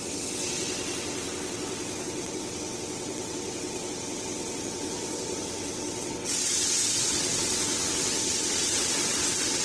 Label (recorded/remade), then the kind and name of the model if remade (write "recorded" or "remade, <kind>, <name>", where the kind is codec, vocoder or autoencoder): remade, vocoder, WaveNeXt